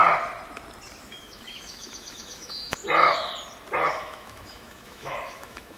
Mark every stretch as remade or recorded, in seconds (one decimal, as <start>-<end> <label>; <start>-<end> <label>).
0.0-1.0 recorded; 1.0-2.8 remade; 2.8-3.9 recorded; 3.9-5.8 remade